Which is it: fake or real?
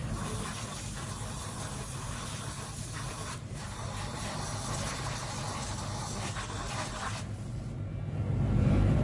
real